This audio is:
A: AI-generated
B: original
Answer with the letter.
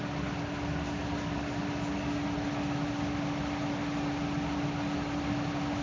B